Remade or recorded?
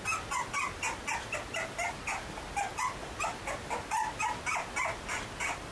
recorded